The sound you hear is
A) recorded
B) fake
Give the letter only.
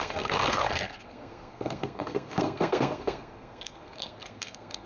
B